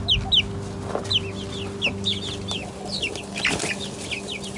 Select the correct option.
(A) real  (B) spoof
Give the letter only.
A